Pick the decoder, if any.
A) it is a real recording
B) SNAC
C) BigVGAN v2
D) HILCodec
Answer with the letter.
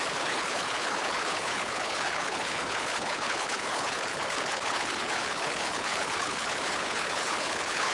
D